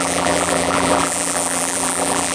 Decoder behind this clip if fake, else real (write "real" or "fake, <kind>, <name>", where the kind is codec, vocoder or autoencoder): fake, vocoder, BigVGAN v2